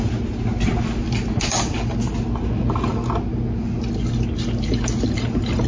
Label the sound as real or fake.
real